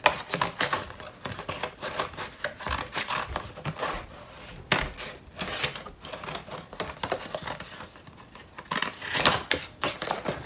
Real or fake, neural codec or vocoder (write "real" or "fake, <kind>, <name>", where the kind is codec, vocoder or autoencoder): real